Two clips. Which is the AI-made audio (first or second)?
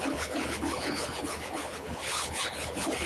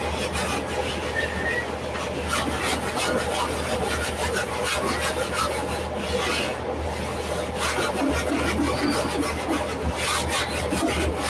first